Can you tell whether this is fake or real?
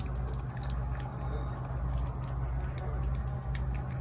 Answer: real